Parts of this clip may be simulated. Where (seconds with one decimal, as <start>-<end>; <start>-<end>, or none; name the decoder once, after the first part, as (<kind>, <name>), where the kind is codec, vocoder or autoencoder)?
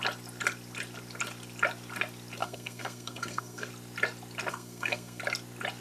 2.4-3.7 (codec, SNAC); 4.5-5.2